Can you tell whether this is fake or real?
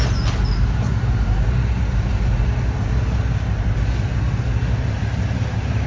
real